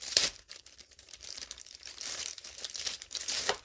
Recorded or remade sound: remade